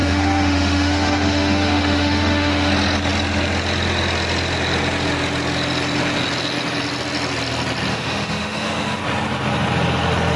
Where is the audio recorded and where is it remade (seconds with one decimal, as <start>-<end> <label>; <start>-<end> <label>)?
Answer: 0.0-2.7 remade; 2.7-7.9 recorded; 7.9-9.0 remade; 9.0-10.4 recorded